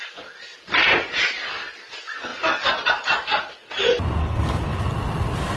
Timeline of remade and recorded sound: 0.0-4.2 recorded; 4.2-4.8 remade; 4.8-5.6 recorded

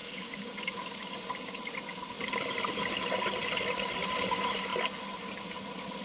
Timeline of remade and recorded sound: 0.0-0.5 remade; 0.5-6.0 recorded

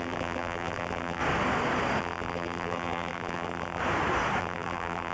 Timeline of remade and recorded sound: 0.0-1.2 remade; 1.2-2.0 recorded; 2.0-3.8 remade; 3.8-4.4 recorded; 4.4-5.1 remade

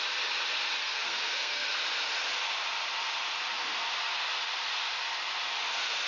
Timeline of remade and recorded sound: 0.0-0.8 recorded; 0.8-1.7 remade; 1.7-6.1 recorded